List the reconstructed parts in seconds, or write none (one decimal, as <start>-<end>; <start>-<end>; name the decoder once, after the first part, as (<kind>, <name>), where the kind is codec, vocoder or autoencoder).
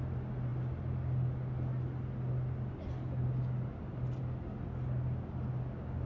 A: none